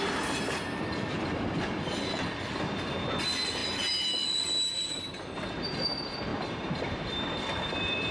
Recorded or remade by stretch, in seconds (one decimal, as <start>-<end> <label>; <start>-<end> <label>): 0.0-3.6 remade; 3.6-5.5 recorded; 5.5-8.1 remade